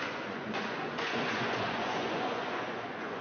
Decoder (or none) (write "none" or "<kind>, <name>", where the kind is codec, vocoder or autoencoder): vocoder, Vocos